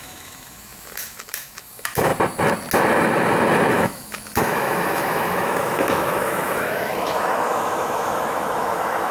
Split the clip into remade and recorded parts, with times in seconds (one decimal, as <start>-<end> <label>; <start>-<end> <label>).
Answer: 0.0-2.1 remade; 2.1-3.7 recorded; 3.7-9.1 remade